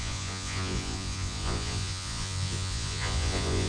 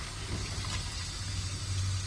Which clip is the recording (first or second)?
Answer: second